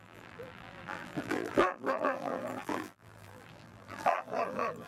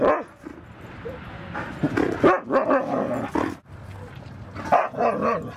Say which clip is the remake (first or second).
first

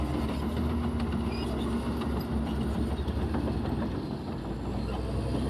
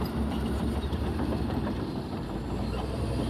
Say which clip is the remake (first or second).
second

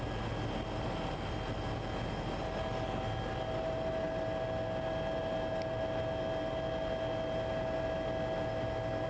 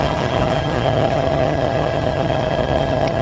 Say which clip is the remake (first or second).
second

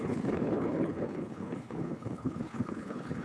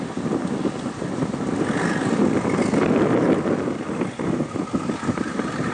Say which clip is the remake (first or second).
first